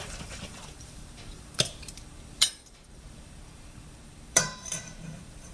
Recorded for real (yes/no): no